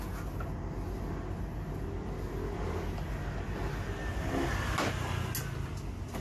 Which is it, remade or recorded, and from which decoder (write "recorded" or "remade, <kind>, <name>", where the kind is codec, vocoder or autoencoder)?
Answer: recorded